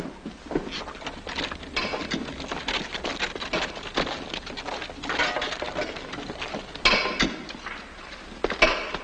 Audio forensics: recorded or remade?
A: recorded